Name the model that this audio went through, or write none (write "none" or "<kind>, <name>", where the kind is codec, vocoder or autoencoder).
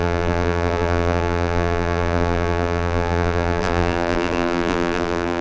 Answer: vocoder, BigVGAN v2